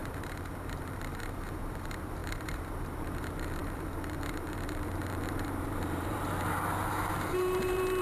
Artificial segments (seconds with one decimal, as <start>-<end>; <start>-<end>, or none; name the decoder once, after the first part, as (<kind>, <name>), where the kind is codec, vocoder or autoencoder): 0.0-8.0 (vocoder, BigVGAN v2)